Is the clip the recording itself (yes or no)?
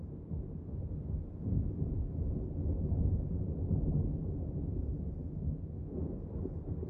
yes